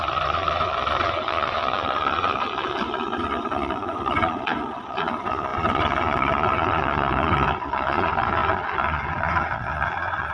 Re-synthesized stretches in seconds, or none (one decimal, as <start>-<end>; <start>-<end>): 0.0-10.3